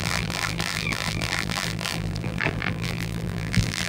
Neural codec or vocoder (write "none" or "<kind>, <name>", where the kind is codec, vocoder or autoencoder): vocoder, BigVGAN v2